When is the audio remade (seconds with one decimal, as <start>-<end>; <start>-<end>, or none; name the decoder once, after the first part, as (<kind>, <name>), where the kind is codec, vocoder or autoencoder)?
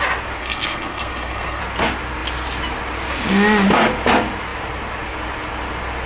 0.4-1.6 (codec, SNAC)